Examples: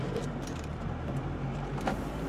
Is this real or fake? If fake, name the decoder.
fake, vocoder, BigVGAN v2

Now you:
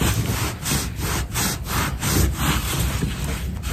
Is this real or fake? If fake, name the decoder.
real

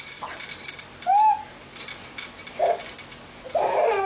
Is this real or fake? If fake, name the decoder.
real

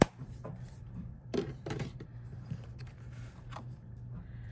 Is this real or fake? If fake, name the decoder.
fake, vocoder, BigVGAN v2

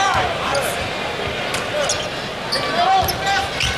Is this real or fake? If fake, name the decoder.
real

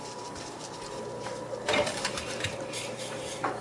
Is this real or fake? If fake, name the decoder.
fake, vocoder, BigVGAN v2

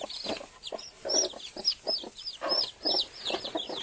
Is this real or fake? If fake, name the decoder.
real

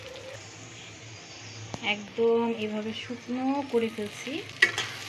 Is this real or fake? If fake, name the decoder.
real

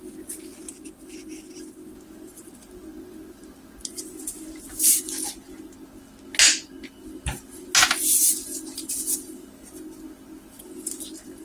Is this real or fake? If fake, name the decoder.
real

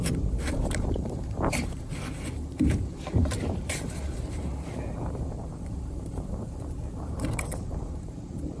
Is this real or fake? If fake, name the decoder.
fake, vocoder, BigVGAN v2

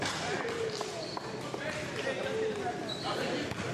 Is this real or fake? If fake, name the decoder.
real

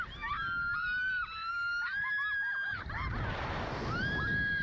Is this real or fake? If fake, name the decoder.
fake, vocoder, BigVGAN v2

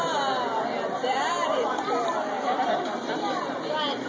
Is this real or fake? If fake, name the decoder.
fake, vocoder, BigVGAN v2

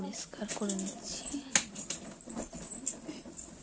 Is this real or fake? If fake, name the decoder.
real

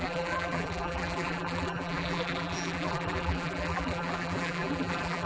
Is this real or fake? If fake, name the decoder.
fake, vocoder, BigVGAN v2